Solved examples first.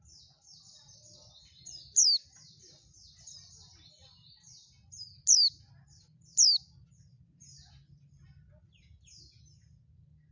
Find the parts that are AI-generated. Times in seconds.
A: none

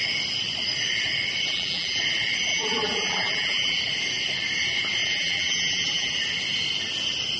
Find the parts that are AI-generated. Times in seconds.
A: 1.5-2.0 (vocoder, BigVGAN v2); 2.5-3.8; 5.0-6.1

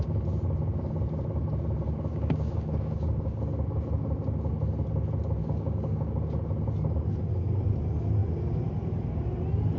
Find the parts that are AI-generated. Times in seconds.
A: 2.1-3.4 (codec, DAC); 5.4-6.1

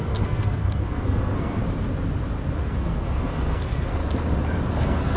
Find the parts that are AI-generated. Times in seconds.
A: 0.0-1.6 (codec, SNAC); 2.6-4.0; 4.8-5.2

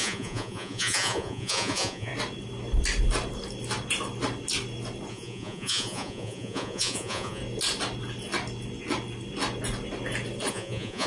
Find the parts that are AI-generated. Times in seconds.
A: 0.0-2.1 (vocoder, Vocos); 5.1-7.4; 10.5-11.1

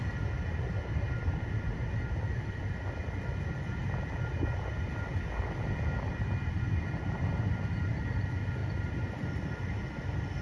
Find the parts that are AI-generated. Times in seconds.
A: none

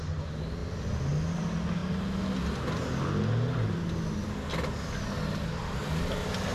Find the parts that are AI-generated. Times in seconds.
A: none

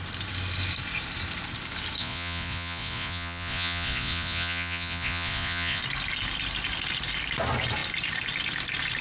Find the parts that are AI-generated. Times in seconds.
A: 2.0-5.8 (vocoder, Vocos)